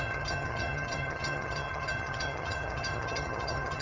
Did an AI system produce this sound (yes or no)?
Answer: yes